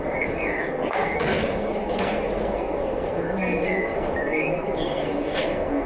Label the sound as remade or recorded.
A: remade